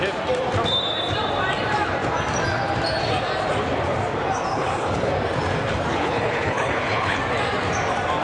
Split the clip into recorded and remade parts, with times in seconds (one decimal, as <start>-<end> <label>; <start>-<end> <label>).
0.0-4.5 recorded; 4.5-5.1 remade; 5.1-5.9 recorded; 5.9-7.2 remade; 7.2-8.2 recorded